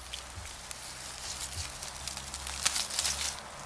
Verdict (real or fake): real